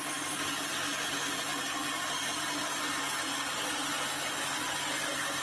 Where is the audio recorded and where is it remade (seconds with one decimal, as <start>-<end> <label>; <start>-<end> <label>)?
0.0-5.4 recorded